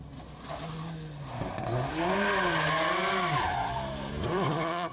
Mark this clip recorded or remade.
recorded